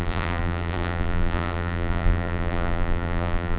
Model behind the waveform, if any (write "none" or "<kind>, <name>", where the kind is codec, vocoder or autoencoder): vocoder, BigVGAN v2